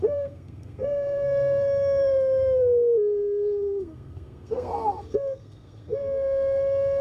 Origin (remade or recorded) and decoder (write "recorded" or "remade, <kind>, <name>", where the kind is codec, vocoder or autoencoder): remade, codec, SNAC